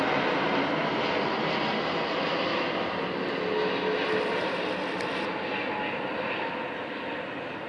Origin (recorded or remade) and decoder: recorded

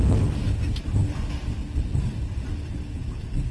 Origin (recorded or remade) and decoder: recorded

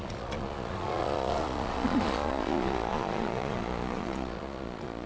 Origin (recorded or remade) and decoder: remade, vocoder, Vocos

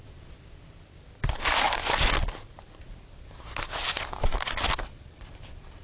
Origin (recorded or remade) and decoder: recorded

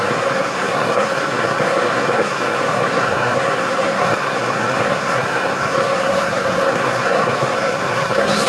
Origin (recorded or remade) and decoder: remade, codec, SNAC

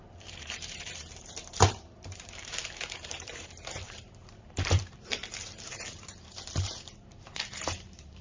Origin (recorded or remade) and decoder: remade, vocoder, BigVGAN v2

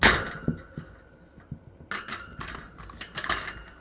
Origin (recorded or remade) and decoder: recorded